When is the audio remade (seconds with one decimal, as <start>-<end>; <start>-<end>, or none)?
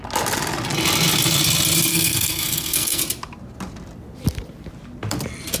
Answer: 1.9-3.0